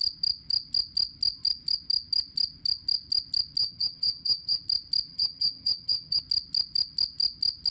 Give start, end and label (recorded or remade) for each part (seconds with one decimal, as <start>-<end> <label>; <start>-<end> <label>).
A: 0.0-3.6 recorded; 3.6-4.6 remade; 4.6-5.1 recorded; 5.1-6.2 remade; 6.2-7.7 recorded